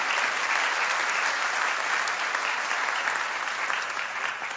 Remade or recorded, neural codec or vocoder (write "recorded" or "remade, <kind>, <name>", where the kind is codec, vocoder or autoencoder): recorded